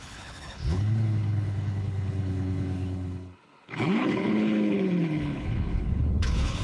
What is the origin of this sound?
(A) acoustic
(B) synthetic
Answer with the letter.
B